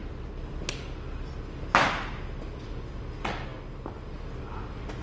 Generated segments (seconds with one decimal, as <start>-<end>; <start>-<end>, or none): none